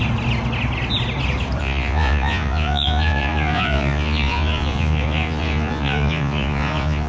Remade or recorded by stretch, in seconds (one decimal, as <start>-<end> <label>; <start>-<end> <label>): 0.0-1.6 recorded; 1.6-7.1 remade